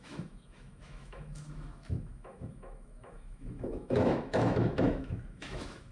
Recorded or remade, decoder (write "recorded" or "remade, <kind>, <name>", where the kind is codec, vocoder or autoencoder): remade, autoencoder, DAC-VAE